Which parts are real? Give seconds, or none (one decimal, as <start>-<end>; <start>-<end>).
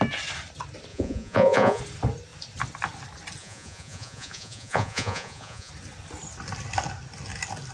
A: 0.0-0.9; 1.8-3.4; 5.7-7.7